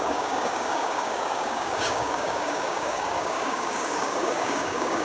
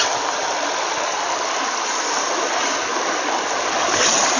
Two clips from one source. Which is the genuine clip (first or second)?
second